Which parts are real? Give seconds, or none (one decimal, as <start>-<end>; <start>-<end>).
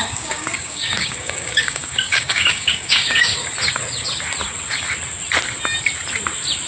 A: 3.3-6.7